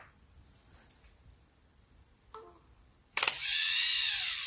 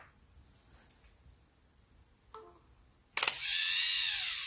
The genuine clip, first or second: second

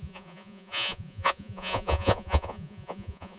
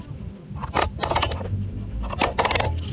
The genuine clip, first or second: second